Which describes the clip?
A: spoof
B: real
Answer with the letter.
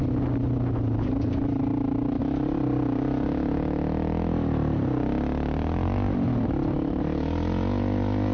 B